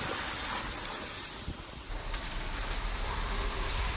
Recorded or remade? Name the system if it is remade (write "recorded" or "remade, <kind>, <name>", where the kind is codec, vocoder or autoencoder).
recorded